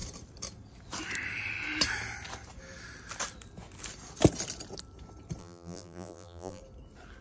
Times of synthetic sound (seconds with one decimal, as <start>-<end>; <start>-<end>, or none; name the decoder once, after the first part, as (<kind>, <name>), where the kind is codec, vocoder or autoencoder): 5.4-6.6 (vocoder, BigVGAN v2)